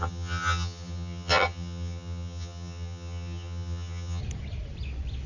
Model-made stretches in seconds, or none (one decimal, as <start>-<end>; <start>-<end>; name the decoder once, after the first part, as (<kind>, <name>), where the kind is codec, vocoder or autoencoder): 0.0-4.2 (vocoder, HiFi-GAN)